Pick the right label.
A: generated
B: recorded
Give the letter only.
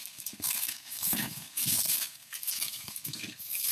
A